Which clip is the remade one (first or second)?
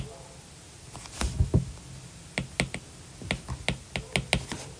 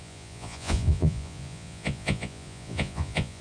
second